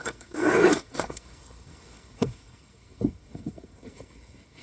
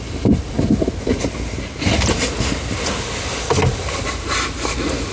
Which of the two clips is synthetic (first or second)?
first